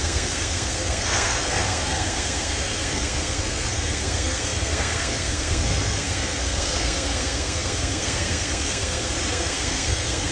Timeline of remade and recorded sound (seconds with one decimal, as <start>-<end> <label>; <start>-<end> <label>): 0.0-10.3 remade